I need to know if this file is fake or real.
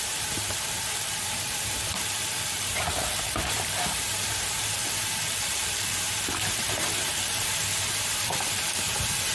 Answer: fake